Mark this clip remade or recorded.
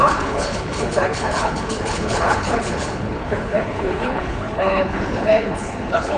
remade